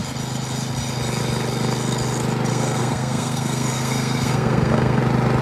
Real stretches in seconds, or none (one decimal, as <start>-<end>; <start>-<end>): 0.0-2.5; 5.0-5.4